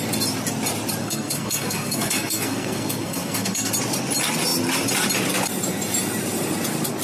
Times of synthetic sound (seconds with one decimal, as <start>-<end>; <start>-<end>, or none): 1.0-3.7